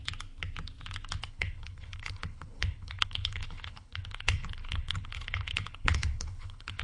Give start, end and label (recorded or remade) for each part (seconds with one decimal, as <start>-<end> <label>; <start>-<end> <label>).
0.0-1.2 recorded; 1.2-6.8 remade